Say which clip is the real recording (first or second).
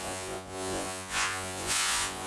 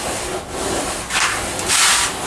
second